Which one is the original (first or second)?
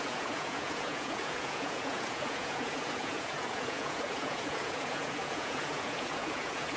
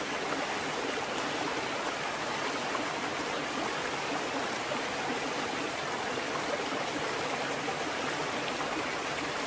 second